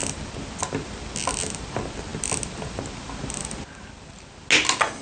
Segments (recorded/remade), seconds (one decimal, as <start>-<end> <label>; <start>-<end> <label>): 0.0-5.0 recorded